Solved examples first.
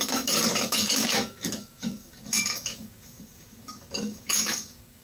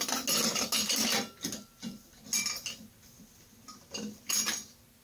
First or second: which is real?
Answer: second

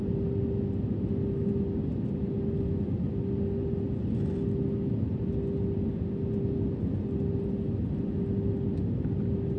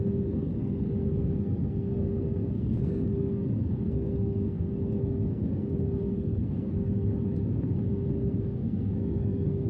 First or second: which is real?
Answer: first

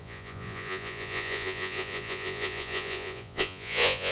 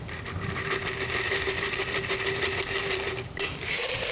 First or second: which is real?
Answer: second